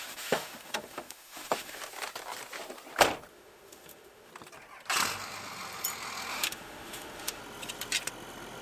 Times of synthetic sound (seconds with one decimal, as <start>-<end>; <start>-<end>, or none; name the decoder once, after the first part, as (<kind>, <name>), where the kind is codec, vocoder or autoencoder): 0.0-1.8 (autoencoder, DAC-VAE); 3.3-4.3; 6.3-7.4